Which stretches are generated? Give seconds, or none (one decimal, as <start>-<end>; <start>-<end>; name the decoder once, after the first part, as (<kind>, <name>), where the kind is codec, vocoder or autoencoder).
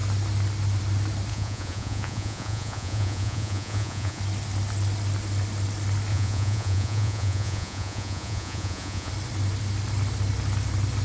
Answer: 1.3-4.2 (vocoder, Vocos); 6.1-9.1